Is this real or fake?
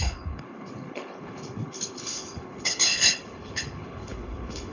fake